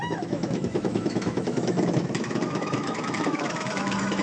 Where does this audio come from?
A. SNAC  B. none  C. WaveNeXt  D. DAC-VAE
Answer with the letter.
D